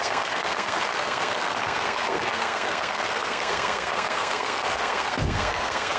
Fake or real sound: fake